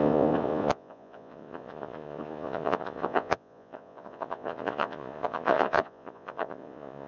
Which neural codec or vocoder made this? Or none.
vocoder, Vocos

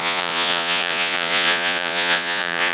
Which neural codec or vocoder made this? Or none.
vocoder, Vocos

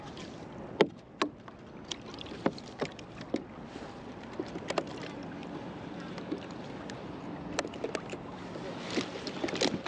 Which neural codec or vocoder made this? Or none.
none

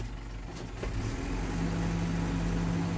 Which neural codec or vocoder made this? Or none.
none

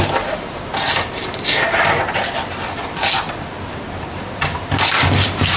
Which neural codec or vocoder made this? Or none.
none